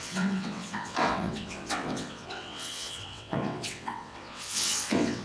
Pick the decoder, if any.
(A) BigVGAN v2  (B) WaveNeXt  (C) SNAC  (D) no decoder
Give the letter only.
B